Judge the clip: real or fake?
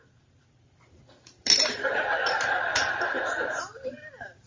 fake